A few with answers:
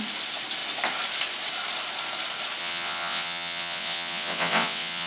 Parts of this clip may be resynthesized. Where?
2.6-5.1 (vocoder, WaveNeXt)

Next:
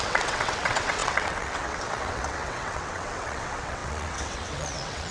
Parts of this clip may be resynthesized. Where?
0.0-5.1 (vocoder, WaveNeXt)